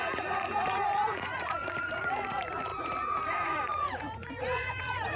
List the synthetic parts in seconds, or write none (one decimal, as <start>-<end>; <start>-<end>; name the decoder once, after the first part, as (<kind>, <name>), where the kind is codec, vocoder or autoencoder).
0.0-5.2 (vocoder, Vocos)